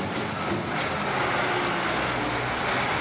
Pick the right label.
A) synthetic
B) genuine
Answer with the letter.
B